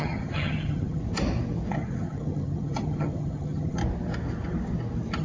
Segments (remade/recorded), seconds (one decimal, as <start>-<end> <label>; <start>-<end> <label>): 0.0-1.0 remade; 1.0-1.7 recorded; 1.7-3.8 remade; 3.8-5.2 recorded